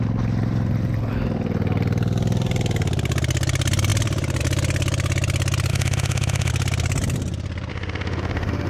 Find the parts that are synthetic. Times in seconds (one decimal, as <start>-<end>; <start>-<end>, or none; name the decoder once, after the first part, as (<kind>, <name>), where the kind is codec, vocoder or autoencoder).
5.7-6.5 (autoencoder, DAC-VAE); 7.7-8.7